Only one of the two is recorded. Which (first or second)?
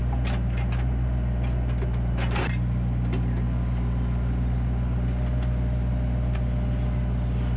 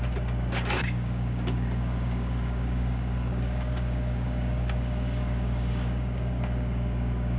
first